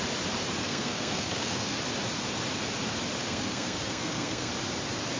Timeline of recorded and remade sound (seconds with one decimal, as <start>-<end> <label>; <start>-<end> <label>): 0.0-0.6 recorded; 0.6-1.8 remade; 1.8-3.2 recorded; 3.2-4.5 remade; 4.5-5.2 recorded